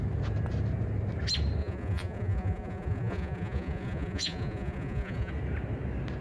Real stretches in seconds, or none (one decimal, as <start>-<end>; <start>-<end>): 0.0-1.6; 5.3-6.2